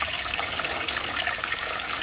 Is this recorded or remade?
remade